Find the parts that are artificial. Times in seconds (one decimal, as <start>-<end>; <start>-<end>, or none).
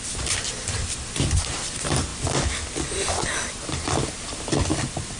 none